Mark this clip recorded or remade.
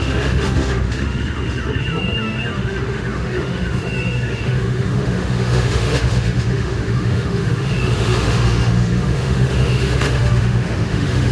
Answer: remade